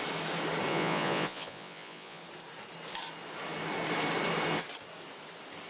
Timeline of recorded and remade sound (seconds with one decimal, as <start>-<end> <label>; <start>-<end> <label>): 0.0-0.7 recorded; 0.7-2.2 remade; 2.2-5.7 recorded